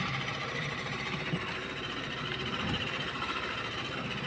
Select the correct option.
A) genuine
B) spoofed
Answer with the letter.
B